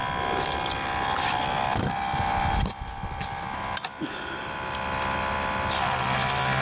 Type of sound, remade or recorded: recorded